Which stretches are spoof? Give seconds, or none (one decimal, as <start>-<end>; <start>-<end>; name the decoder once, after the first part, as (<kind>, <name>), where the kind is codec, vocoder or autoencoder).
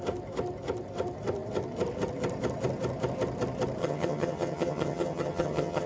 3.8-5.9 (vocoder, HiFi-GAN)